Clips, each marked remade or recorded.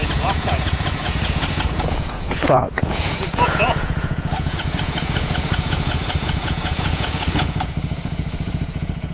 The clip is remade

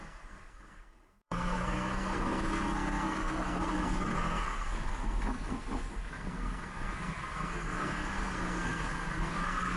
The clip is remade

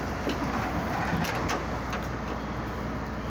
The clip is recorded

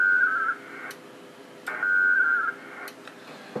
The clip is recorded